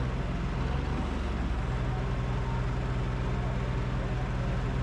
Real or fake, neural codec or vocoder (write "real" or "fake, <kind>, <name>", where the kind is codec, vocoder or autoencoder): real